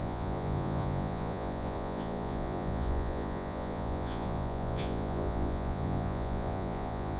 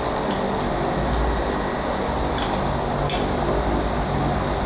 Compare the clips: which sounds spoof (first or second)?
first